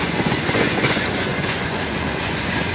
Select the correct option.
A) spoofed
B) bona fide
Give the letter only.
A